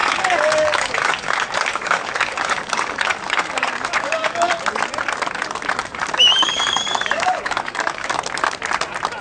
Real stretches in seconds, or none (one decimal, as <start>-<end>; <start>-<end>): 4.5-5.8; 8.2-9.2